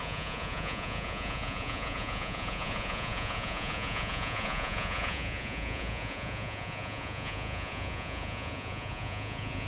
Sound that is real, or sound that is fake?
fake